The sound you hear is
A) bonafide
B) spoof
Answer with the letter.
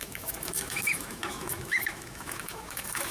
B